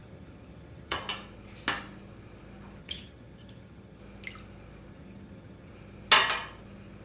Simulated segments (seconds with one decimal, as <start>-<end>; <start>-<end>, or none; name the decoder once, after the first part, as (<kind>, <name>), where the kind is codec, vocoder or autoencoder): 0.0-1.0 (vocoder, HiFi-GAN); 2.8-4.0; 4.9-5.7